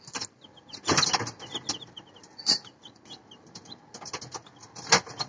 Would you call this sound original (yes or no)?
yes